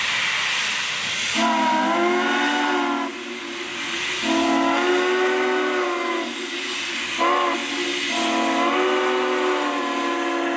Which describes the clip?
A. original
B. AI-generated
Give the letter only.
A